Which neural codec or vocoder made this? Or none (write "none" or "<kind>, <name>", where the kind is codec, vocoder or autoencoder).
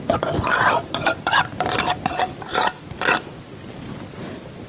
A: none